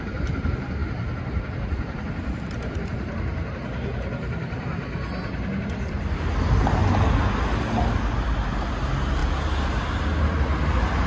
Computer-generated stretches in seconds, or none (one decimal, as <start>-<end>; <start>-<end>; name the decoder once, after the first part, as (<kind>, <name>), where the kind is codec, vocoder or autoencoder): none